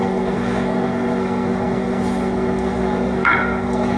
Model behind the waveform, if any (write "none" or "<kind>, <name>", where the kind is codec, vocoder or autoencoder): codec, SNAC